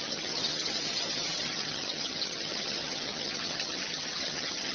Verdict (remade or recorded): remade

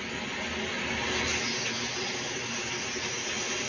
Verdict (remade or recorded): recorded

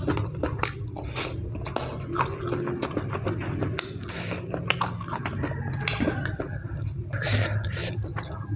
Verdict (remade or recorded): recorded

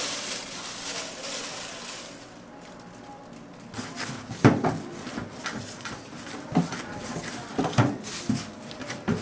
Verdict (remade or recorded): recorded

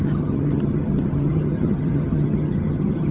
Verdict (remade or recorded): remade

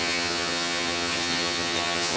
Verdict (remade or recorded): remade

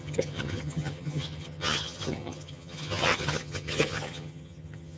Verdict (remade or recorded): remade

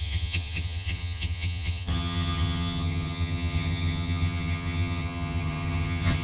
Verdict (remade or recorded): remade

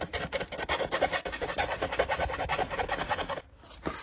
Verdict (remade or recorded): recorded